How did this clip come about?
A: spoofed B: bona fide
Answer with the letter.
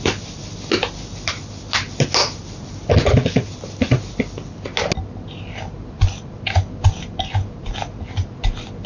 B